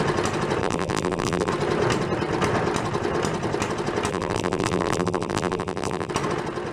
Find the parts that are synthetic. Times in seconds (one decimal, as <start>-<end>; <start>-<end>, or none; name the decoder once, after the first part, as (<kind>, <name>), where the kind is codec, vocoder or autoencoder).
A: 0.6-1.5 (vocoder, BigVGAN v2); 4.1-6.1